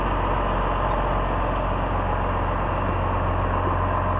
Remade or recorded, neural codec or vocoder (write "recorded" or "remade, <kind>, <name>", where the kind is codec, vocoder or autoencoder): recorded